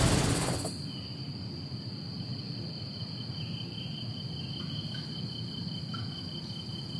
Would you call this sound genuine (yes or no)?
yes